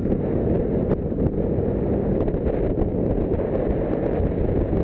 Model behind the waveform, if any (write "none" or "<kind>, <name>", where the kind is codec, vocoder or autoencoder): none